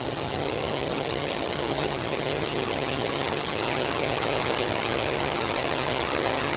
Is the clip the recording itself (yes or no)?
no